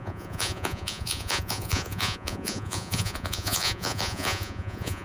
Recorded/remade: remade